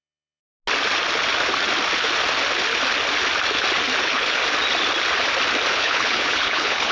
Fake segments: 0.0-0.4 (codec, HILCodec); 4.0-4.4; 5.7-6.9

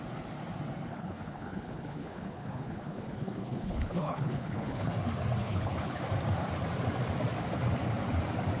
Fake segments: 0.9-4.9 (codec, HILCodec); 5.4-6.0

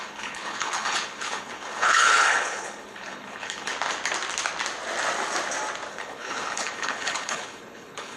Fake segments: 0.0-3.7 (codec, HILCodec); 5.9-8.2

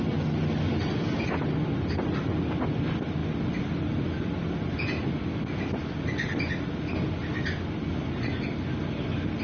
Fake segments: none

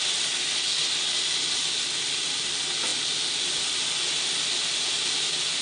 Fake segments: none

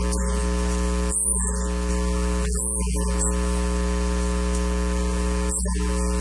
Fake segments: none

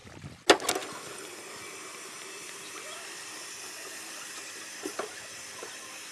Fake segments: none